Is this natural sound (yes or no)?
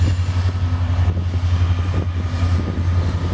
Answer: yes